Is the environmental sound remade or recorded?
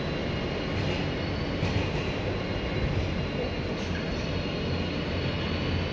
recorded